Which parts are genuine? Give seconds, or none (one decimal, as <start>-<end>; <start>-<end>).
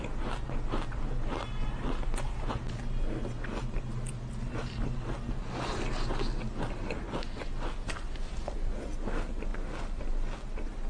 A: 0.0-10.9